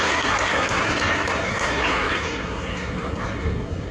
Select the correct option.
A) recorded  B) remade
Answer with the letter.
B